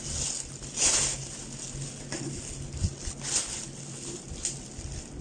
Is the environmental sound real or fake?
real